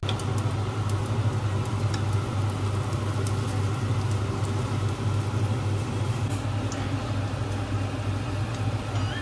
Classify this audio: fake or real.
real